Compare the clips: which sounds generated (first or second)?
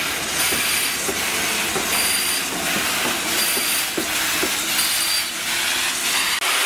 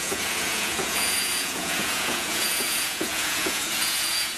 second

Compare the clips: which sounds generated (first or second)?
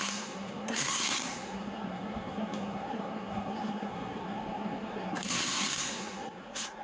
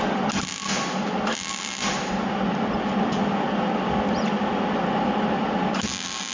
first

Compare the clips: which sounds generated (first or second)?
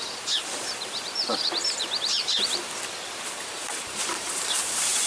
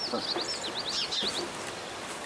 first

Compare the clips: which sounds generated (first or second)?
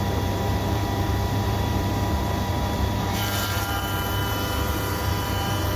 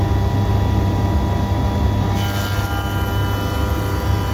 first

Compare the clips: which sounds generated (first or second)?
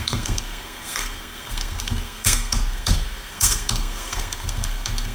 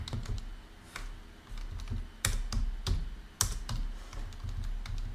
first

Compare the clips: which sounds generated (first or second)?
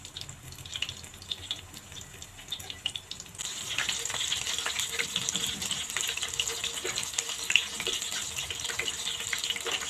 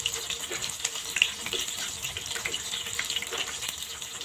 second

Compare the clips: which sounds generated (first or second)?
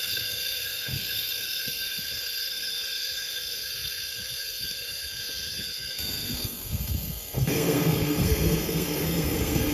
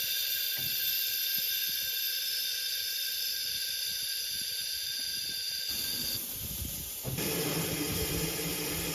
first